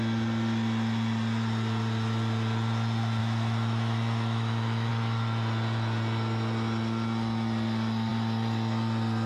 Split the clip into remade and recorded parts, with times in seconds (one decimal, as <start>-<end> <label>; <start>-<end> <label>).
0.0-3.2 recorded; 3.2-4.9 remade; 4.9-9.3 recorded